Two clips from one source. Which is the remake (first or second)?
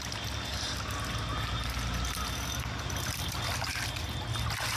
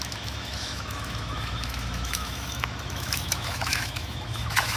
second